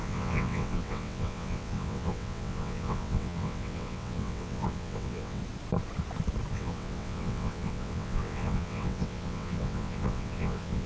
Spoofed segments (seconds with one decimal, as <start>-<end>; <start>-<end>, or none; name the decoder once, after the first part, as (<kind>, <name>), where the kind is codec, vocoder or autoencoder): 0.0-5.4 (vocoder, WaveNeXt); 6.5-10.9

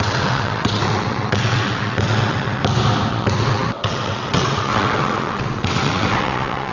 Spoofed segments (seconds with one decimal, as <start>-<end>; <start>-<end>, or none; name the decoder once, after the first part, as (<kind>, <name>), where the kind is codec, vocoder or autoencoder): 0.0-2.6 (vocoder, WaveNeXt); 3.1-6.7

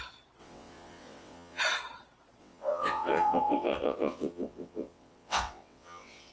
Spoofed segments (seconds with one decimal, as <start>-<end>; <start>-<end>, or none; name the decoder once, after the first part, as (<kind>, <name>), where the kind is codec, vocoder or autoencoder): 0.4-1.6 (vocoder, WaveNeXt); 2.4-6.3

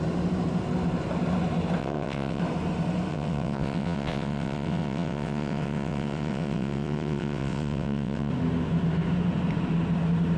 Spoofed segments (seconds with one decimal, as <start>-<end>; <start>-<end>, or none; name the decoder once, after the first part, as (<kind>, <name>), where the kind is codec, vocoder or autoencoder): 1.8-2.4 (vocoder, WaveNeXt); 3.1-8.3

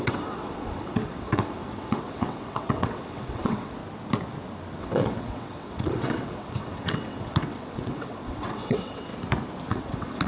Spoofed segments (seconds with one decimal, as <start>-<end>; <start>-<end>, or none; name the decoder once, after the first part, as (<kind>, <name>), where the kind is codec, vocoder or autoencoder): 0.0-3.8 (vocoder, WaveNeXt); 4.8-9.1; 9.7-10.3

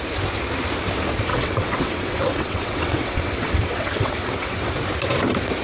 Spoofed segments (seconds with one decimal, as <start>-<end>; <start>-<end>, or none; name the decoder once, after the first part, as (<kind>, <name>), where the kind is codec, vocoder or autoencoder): 1.3-4.7 (vocoder, WaveNeXt)